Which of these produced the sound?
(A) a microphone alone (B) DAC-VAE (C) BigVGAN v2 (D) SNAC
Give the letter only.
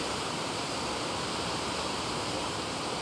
C